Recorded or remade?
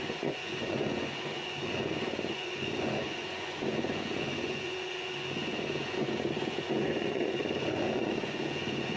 remade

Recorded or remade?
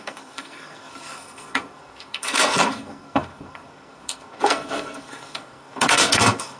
remade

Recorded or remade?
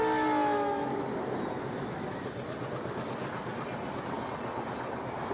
recorded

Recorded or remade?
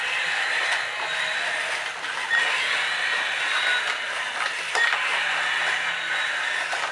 recorded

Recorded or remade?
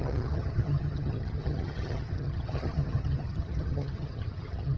remade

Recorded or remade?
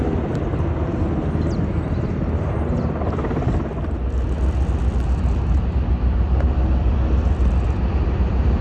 recorded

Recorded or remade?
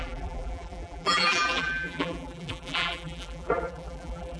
remade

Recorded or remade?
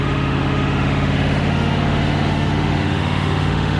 remade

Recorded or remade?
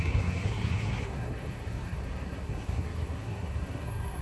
remade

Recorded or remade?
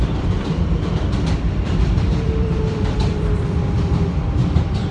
remade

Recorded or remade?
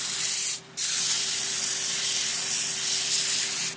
recorded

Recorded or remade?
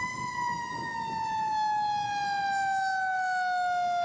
recorded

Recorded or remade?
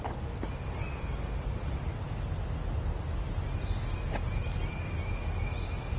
recorded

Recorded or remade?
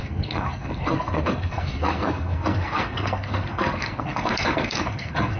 remade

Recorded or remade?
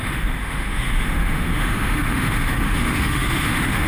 remade